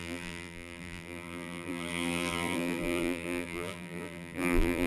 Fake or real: fake